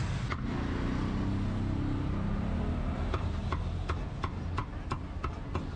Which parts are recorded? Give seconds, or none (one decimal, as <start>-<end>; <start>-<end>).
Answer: 0.0-5.8